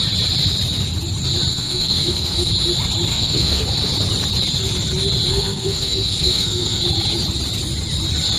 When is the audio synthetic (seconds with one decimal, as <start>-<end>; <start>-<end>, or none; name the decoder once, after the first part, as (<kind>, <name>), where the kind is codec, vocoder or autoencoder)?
1.5-2.5 (codec, SNAC); 3.1-3.6; 5.3-6.8